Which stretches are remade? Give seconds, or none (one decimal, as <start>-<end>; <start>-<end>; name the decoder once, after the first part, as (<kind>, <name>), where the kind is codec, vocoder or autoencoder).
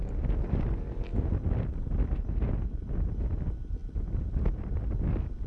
none